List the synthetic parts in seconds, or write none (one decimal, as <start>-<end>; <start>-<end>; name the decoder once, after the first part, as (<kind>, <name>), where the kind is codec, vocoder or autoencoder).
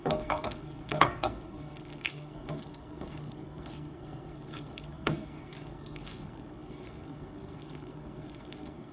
0.0-8.9 (codec, SNAC)